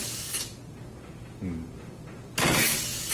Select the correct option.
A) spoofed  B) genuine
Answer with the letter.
B